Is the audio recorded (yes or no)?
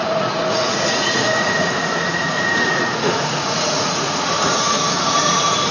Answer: no